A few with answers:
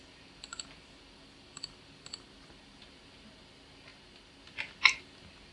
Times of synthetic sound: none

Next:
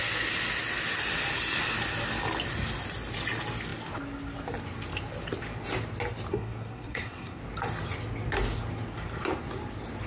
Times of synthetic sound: 6.3-7.4 (codec, SNAC)

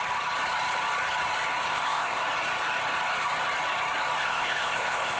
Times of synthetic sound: 1.7-2.2 (codec, ZipCodec); 4.2-5.2